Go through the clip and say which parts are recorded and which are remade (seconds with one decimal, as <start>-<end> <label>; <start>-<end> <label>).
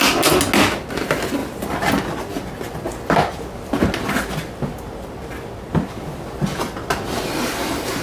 0.0-1.4 recorded; 1.4-1.9 remade; 1.9-8.0 recorded